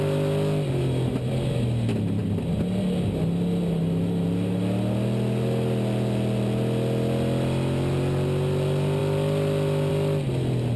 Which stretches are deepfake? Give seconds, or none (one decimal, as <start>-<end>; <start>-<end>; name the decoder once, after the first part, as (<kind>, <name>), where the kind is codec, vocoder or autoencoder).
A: none